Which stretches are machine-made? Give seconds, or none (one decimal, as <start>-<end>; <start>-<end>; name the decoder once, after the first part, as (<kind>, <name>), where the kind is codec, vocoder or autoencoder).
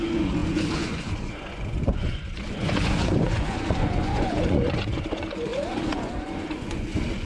0.0-7.2 (vocoder, Vocos)